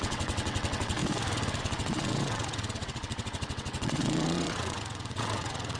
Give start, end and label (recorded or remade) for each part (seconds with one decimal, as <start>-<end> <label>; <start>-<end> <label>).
0.0-1.0 remade; 1.0-1.6 recorded; 1.6-5.8 remade